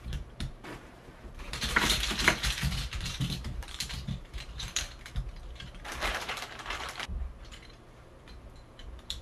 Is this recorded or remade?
remade